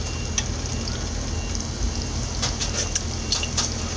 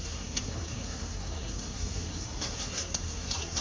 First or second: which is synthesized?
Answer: second